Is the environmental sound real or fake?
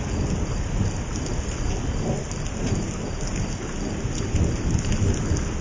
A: real